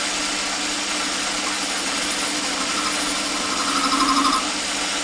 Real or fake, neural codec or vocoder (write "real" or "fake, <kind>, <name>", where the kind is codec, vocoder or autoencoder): real